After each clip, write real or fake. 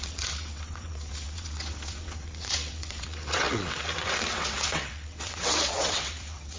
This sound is fake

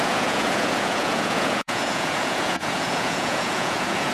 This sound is fake